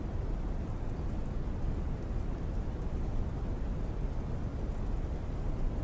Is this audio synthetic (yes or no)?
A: no